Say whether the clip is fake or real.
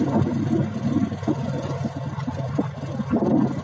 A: real